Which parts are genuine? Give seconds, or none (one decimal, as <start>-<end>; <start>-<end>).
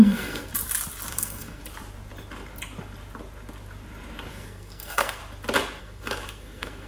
0.5-1.1; 1.6-4.3; 5.2-5.8